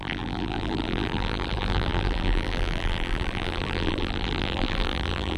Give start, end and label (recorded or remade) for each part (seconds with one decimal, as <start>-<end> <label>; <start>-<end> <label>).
0.0-5.4 remade